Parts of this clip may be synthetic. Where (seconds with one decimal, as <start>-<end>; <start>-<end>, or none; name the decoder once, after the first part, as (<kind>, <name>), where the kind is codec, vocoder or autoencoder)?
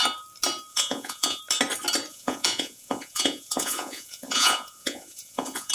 0.7-1.4 (vocoder, Vocos); 2.1-5.7